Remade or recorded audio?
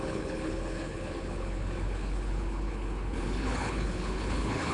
remade